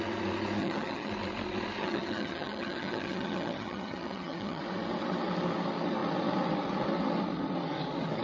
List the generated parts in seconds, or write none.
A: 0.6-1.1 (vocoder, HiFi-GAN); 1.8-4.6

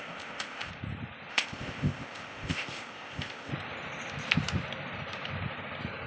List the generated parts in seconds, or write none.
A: 0.0-0.7 (codec, ZipCodec); 1.3-3.5

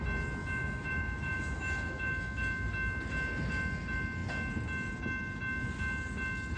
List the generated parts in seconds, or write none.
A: 0.4-2.7 (autoencoder, DAC-VAE)

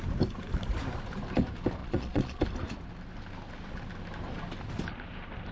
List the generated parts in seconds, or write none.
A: 1.8-2.4 (vocoder, Vocos)

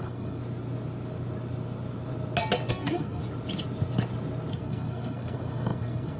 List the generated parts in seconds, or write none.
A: 0.0-0.4 (codec, SNAC); 2.7-3.2; 4.5-6.2

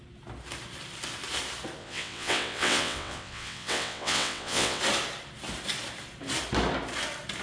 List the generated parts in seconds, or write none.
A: 1.8-4.8 (vocoder, WaveNeXt)

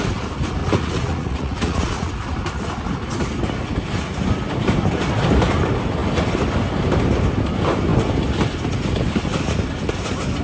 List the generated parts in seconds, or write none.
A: 0.6-2.1 (vocoder, Vocos)